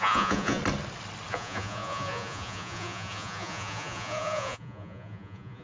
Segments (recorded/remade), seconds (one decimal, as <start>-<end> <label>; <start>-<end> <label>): 0.0-0.6 remade; 0.6-1.3 recorded; 1.3-5.6 remade